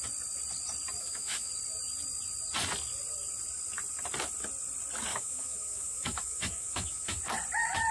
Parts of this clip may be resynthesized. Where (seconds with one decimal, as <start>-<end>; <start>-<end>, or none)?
1.0-1.5; 5.1-7.2